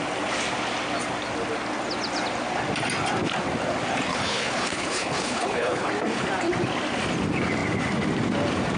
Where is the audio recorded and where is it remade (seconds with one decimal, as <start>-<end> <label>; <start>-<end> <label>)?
0.0-4.1 recorded; 4.1-5.9 remade; 5.9-8.8 recorded